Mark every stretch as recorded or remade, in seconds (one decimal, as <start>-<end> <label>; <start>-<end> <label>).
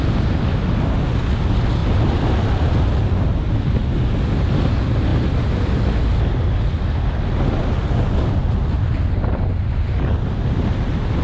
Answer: 0.0-1.8 recorded; 1.8-2.4 remade; 2.4-11.2 recorded